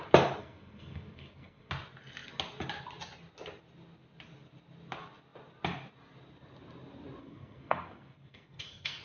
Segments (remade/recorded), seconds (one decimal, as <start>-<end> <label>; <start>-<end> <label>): 0.0-0.4 recorded; 0.4-1.7 remade; 1.7-7.2 recorded; 7.2-9.0 remade